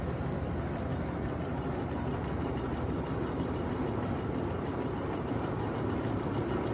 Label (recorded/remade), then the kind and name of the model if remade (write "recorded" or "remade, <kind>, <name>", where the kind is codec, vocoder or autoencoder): remade, vocoder, BigVGAN v2